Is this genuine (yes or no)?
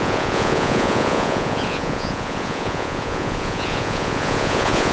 no